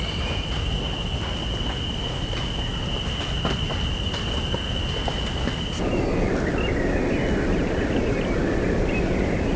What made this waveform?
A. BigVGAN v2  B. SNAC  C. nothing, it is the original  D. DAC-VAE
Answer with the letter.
C